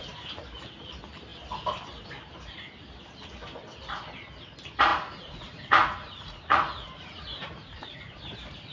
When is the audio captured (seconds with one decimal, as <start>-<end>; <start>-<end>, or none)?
0.0-4.9; 8.2-8.7